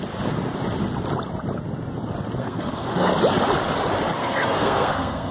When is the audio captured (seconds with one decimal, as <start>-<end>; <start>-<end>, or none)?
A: 0.0-2.4; 3.1-4.2